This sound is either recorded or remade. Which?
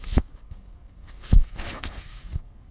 remade